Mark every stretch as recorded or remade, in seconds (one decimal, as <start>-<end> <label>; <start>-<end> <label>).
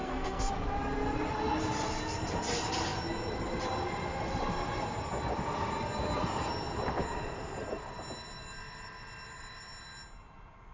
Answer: 0.0-0.5 remade; 0.5-10.7 recorded